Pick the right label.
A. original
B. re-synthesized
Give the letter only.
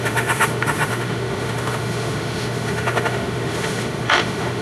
B